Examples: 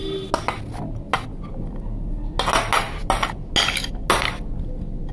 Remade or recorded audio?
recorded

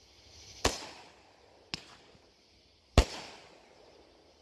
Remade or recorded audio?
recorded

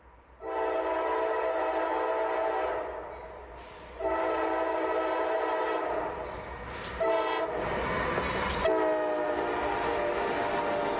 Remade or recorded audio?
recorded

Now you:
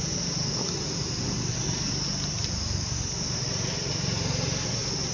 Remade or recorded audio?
recorded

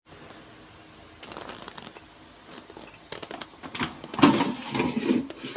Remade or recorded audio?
recorded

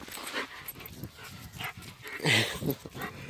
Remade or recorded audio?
recorded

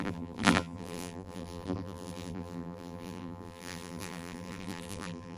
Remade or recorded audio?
remade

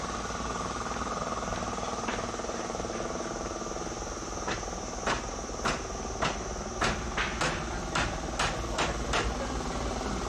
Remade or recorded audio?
recorded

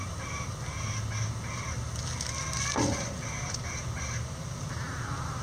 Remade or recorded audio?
recorded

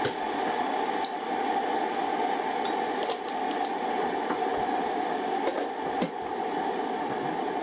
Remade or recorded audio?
recorded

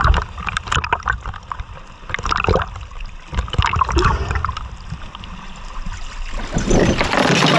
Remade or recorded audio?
recorded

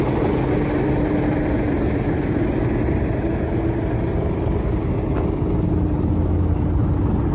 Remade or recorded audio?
recorded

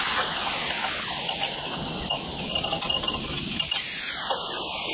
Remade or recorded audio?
recorded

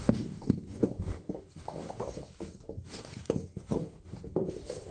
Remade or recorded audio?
remade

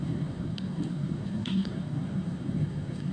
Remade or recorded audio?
remade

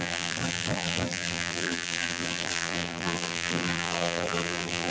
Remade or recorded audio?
remade